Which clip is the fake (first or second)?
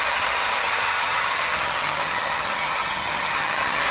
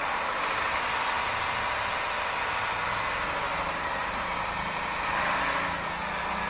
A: first